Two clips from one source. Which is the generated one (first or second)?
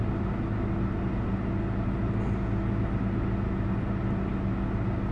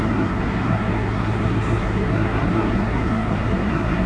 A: second